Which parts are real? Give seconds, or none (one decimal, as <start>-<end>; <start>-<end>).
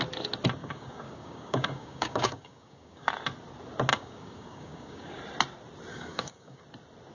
0.0-0.6; 3.1-3.9; 5.2-5.9; 6.6-7.1